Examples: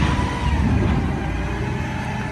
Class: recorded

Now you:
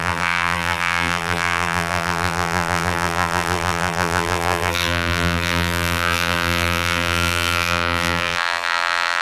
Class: remade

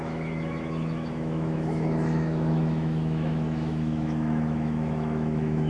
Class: remade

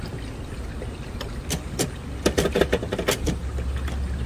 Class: recorded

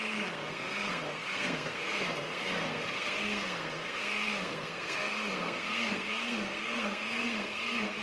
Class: remade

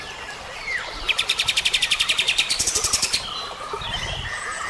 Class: remade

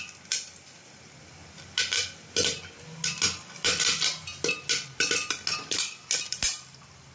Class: recorded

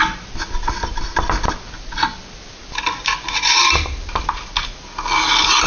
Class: recorded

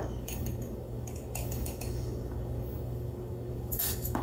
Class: remade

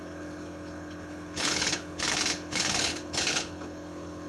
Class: remade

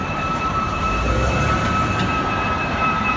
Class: remade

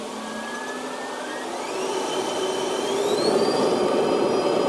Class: recorded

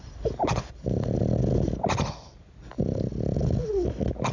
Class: recorded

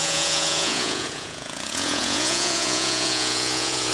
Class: remade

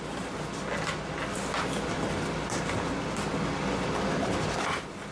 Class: recorded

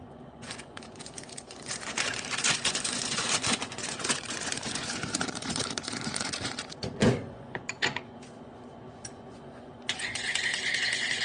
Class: remade